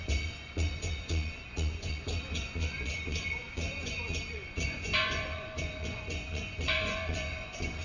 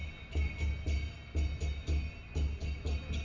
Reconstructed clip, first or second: first